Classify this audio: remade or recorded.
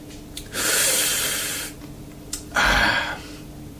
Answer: recorded